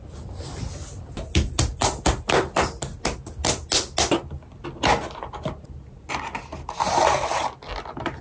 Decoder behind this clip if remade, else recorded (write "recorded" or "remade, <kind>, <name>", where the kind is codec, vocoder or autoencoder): recorded